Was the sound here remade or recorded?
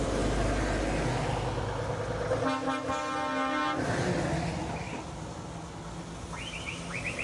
recorded